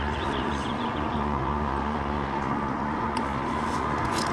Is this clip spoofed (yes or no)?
yes